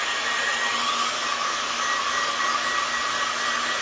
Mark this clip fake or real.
real